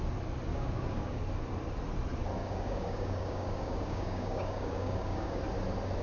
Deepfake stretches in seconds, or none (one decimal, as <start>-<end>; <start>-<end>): 0.5-1.2; 2.4-5.4